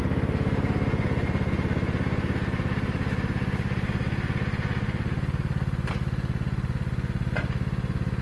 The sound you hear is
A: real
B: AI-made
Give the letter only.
A